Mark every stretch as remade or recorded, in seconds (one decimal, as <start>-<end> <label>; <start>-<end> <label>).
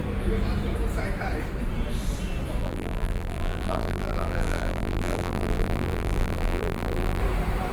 0.0-2.6 recorded; 2.6-7.2 remade; 7.2-7.7 recorded